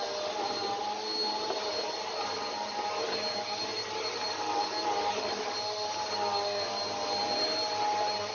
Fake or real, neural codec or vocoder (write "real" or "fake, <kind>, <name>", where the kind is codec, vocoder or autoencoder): real